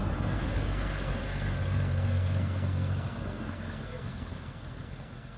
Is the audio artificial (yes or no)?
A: yes